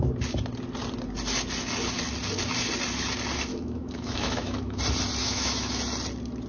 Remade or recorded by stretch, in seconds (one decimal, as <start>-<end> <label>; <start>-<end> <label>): 0.0-3.5 recorded; 3.5-4.8 remade; 4.8-5.2 recorded; 5.2-5.8 remade; 5.8-6.5 recorded